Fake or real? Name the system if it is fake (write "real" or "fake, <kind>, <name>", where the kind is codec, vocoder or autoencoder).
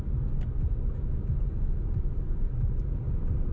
real